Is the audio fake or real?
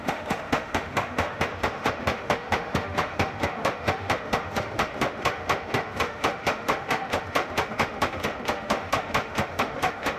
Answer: fake